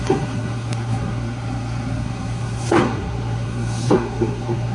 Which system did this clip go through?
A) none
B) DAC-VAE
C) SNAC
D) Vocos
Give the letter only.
C